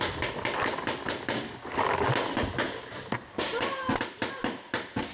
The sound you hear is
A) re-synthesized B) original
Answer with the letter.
B